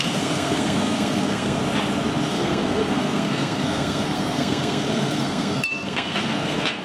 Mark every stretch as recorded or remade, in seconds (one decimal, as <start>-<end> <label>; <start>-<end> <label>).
0.0-1.6 remade; 1.6-2.3 recorded; 2.3-6.8 remade